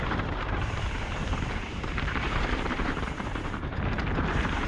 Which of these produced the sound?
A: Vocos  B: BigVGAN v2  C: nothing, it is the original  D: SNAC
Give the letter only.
B